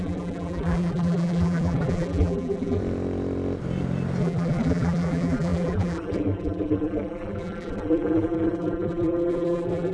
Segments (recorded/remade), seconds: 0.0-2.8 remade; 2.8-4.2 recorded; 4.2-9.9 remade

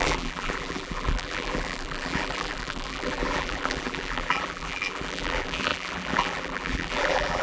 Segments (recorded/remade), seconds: 0.0-7.4 remade